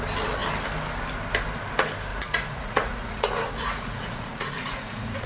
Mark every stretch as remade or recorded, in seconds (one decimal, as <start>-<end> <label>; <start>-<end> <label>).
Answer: 0.0-2.1 recorded; 2.1-5.3 remade